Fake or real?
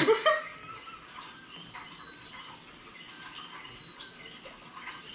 real